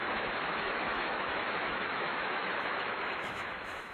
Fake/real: fake